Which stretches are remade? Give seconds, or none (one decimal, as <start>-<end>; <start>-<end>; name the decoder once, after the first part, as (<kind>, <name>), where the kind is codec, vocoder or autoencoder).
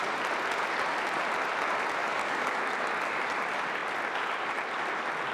2.0-2.6 (codec, DAC)